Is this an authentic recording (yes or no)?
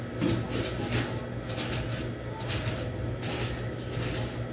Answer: yes